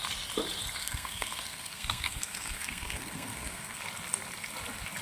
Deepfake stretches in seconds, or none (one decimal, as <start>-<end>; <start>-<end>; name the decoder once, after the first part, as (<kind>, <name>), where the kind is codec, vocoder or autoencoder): 0.8-3.8 (codec, SNAC)